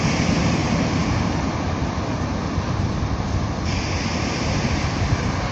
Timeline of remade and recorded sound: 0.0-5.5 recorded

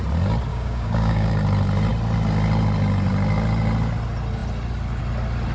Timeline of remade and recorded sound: 0.0-0.5 recorded; 0.5-1.3 remade; 1.3-5.5 recorded

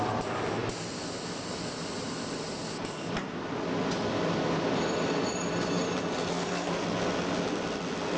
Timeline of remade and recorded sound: 0.0-6.3 recorded; 6.3-6.8 remade; 6.8-8.2 recorded

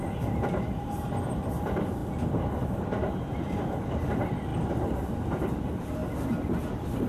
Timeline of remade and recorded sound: 0.0-2.0 remade; 2.0-3.1 recorded; 3.1-4.5 remade; 4.5-5.1 recorded; 5.1-6.0 remade; 6.0-7.1 recorded

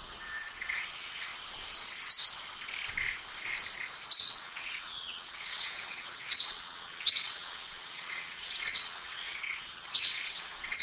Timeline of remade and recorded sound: 0.0-1.3 remade; 1.3-4.2 recorded; 4.2-10.8 remade

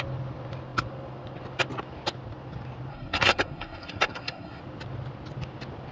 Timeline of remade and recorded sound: 0.0-2.9 recorded; 2.9-4.6 remade; 4.6-5.9 recorded